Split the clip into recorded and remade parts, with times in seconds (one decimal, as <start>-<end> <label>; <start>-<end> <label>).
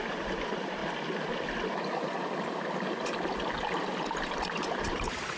0.0-0.8 remade; 0.8-3.8 recorded; 3.8-5.4 remade